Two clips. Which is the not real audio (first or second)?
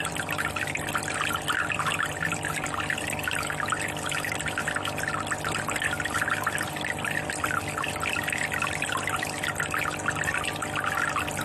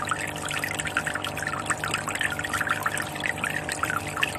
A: second